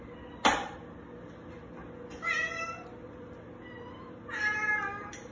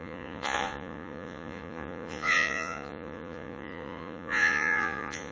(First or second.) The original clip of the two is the first